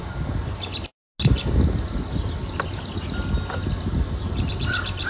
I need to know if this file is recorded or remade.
recorded